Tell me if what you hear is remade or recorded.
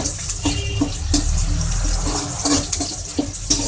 recorded